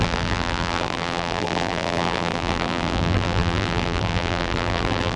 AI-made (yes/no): yes